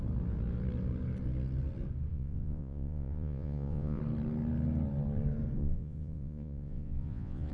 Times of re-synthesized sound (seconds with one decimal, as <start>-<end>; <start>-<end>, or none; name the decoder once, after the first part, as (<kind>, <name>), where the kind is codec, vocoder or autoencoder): 2.1-4.0 (vocoder, Vocos); 5.6-7.5